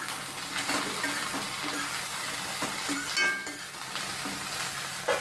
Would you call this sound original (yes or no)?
no